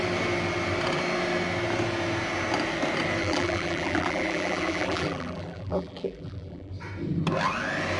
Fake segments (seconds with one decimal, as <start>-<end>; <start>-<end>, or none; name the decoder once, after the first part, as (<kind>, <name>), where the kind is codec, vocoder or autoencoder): 3.2-6.7 (vocoder, BigVGAN v2)